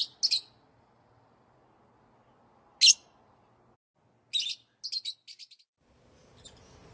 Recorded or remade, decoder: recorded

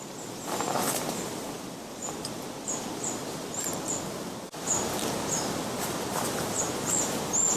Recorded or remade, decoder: recorded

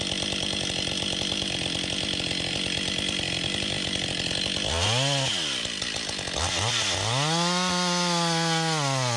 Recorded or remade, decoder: recorded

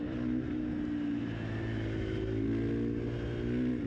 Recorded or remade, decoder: recorded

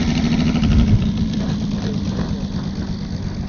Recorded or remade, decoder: remade, vocoder, BigVGAN v2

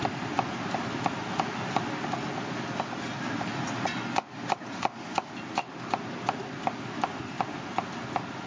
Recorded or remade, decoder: recorded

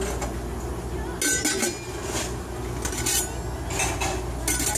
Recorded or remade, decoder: recorded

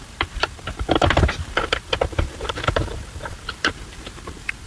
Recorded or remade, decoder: remade, vocoder, BigVGAN v2